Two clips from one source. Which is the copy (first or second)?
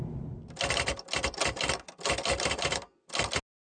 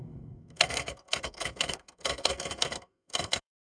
second